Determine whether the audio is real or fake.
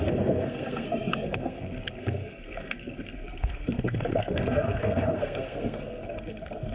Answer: fake